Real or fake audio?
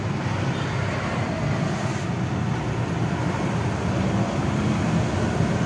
real